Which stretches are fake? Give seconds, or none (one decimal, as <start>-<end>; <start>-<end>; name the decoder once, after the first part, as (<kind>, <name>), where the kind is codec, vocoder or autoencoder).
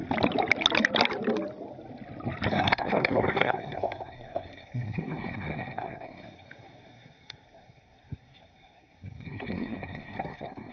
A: 2.5-10.7 (codec, SNAC)